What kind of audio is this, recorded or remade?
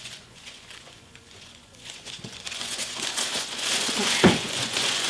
remade